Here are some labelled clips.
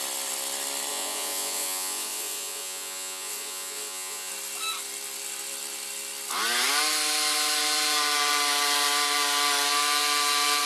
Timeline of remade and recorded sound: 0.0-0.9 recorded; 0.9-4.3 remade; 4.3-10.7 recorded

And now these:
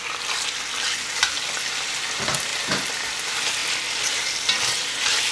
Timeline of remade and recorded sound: 0.0-5.3 recorded

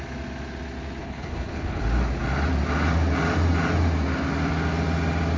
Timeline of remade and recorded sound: 0.0-1.0 recorded; 1.0-1.8 remade; 1.8-5.4 recorded

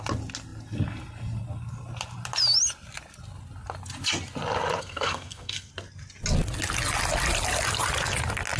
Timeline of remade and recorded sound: 0.0-4.8 recorded; 4.8-5.7 remade; 5.7-8.6 recorded